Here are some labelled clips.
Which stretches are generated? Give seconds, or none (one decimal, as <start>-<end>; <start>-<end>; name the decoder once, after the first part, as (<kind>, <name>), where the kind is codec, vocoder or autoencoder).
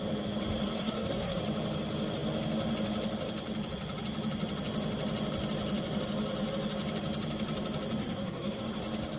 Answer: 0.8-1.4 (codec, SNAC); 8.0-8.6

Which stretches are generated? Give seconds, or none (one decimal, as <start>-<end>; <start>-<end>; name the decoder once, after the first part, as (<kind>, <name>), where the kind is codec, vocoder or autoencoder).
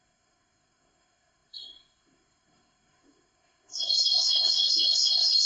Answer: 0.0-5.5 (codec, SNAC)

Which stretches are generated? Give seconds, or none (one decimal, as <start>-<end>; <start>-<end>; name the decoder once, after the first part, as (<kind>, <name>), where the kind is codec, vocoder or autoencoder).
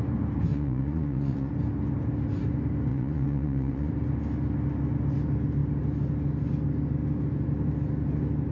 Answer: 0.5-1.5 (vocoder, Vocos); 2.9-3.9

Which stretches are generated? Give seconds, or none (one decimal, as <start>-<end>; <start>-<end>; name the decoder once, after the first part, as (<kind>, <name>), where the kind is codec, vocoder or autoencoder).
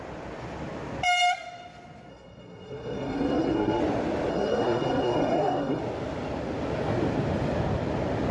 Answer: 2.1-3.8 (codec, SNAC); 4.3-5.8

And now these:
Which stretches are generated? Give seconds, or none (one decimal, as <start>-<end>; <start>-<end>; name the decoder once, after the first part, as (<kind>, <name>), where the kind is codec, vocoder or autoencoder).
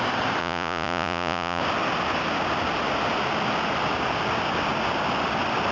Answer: 0.4-1.6 (vocoder, Vocos)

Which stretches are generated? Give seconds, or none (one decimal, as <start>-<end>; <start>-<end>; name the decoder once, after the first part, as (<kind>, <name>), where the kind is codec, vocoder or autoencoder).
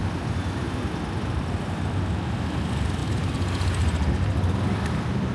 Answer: none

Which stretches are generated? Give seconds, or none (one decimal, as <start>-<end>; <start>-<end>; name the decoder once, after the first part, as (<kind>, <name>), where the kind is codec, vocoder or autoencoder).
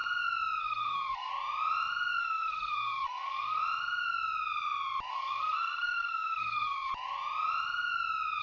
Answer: 0.6-1.3 (codec, SNAC); 2.2-3.6; 5.1-6.9